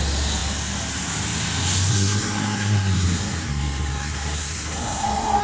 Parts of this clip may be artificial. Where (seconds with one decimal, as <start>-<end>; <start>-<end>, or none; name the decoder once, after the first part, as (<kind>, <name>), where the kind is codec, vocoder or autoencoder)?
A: 1.9-5.4 (codec, SNAC)